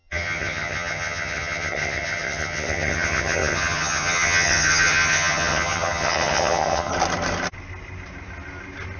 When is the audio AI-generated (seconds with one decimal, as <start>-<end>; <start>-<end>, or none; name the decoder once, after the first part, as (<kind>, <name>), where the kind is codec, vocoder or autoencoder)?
0.0-6.9 (vocoder, HiFi-GAN)